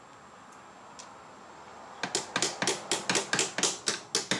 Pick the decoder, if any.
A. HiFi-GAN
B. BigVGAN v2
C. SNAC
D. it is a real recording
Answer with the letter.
D